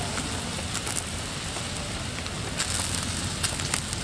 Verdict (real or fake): real